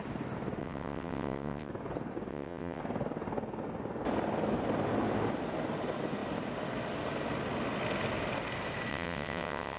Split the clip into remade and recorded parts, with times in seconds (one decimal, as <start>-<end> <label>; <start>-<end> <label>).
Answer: 0.0-0.6 recorded; 0.6-1.7 remade; 1.7-2.3 recorded; 2.3-2.8 remade; 2.8-8.9 recorded; 8.9-9.8 remade